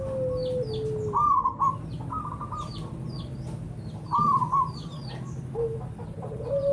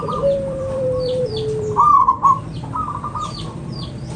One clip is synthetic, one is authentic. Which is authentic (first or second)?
first